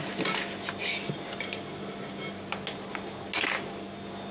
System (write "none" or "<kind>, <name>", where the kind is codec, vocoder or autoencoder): none